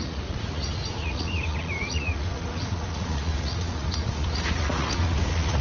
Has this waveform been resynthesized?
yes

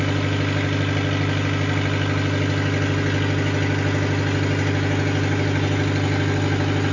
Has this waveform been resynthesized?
no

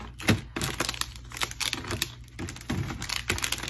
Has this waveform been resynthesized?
no